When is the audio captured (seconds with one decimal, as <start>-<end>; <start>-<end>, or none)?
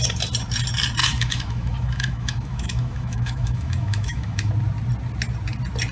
0.0-1.0; 4.5-5.9